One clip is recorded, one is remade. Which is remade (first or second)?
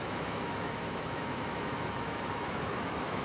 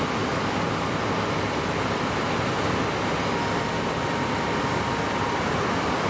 first